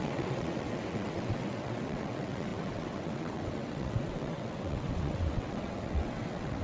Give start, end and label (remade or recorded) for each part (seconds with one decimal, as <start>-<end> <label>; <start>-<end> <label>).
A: 0.0-6.6 remade